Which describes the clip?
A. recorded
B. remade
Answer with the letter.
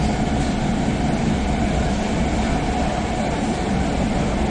A